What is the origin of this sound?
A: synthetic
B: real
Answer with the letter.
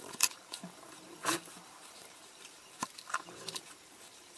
A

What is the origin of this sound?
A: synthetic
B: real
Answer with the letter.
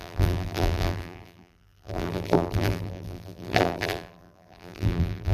A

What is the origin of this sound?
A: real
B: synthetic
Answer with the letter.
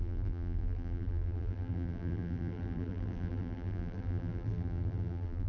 B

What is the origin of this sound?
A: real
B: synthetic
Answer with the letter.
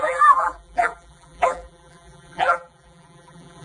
B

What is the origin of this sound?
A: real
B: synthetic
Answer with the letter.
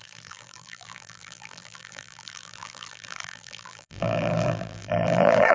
B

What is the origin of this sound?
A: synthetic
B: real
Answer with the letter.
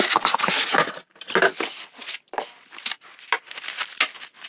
B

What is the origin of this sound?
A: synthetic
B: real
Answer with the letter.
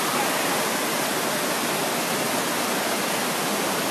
B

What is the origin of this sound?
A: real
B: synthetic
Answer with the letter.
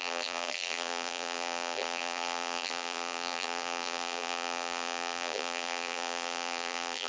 B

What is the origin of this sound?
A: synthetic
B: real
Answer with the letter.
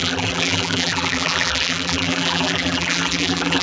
A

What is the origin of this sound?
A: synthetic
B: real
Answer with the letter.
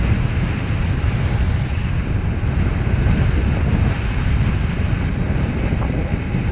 B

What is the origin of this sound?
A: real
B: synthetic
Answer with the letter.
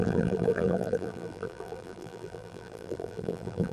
B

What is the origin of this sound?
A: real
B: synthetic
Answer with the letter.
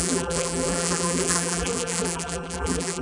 B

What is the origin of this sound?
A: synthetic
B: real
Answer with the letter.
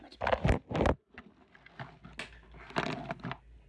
B